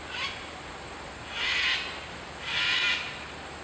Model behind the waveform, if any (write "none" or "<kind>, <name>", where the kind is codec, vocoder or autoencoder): none